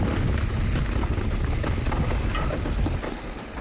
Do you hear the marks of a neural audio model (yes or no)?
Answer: no